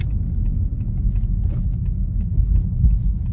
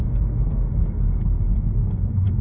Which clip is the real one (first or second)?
first